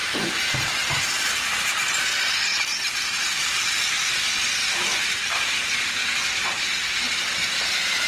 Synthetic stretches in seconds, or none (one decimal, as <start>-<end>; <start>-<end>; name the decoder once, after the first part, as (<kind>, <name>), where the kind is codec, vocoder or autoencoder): 0.0-0.5 (vocoder, BigVGAN v2); 2.5-3.7